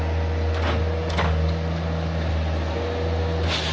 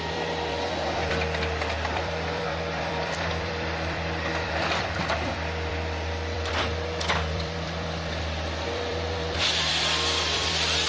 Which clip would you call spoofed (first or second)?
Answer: second